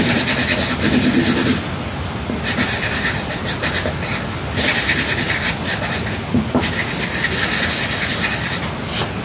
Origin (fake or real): real